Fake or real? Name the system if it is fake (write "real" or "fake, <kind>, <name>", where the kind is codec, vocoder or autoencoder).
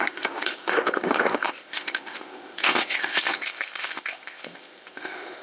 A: fake, codec, ZipCodec